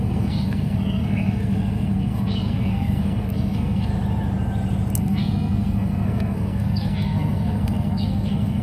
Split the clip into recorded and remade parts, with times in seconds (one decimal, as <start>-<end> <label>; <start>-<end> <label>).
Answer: 0.0-3.9 remade; 3.9-5.0 recorded; 5.0-8.6 remade